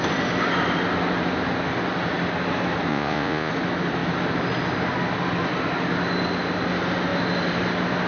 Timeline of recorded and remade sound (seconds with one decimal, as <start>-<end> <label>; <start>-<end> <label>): 0.0-2.9 recorded; 2.9-3.5 remade; 3.5-8.1 recorded